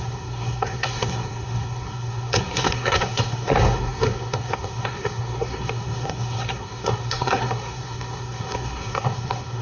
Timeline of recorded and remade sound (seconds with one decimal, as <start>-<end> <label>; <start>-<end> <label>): 0.0-9.6 remade